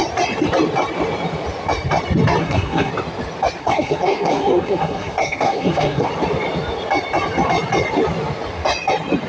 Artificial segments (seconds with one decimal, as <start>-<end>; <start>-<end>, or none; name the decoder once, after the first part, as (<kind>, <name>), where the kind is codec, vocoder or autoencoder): 2.4-2.9 (codec, SNAC); 3.6-6.1